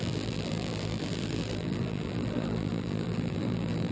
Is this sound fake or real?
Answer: fake